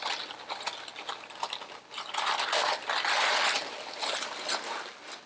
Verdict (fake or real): real